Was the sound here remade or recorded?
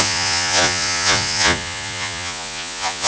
remade